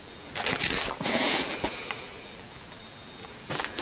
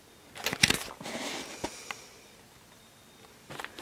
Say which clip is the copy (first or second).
first